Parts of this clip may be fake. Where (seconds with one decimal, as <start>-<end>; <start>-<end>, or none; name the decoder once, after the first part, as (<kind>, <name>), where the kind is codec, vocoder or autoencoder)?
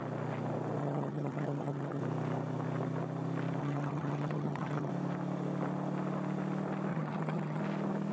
0.8-2.0 (vocoder, HiFi-GAN); 3.6-4.9; 6.9-7.6